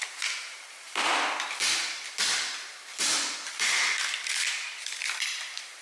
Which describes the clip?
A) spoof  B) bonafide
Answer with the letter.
A